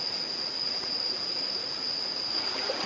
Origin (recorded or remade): remade